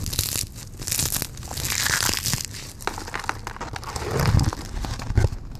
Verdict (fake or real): real